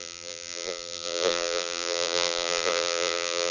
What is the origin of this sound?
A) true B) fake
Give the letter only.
B